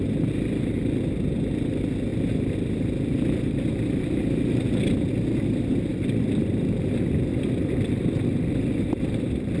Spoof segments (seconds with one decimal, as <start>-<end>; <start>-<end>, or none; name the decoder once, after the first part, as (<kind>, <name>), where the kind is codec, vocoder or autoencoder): 5.9-6.6 (vocoder, BigVGAN v2); 7.3-9.6